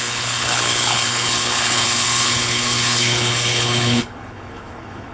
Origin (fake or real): fake